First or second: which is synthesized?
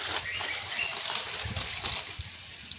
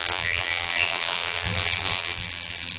second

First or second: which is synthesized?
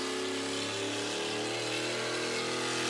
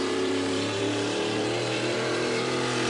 second